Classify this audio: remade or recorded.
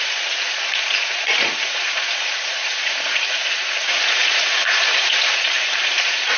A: remade